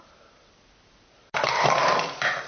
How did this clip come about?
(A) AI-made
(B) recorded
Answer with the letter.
B